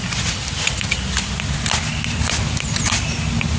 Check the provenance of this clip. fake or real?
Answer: real